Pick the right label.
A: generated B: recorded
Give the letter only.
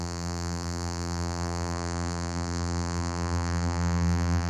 A